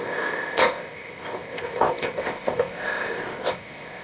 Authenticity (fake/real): fake